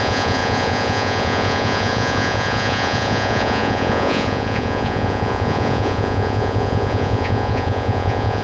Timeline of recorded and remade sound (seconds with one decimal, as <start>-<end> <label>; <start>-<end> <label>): 0.0-8.4 remade